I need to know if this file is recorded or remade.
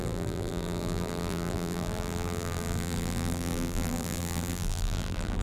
remade